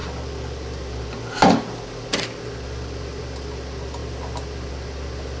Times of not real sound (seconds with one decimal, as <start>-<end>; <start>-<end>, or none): none